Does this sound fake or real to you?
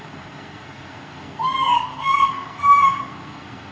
fake